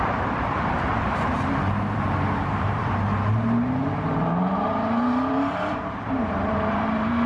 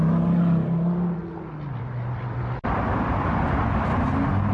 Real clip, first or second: second